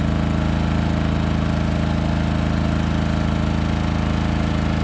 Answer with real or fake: real